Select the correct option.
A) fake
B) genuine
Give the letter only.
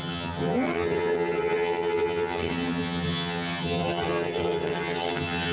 A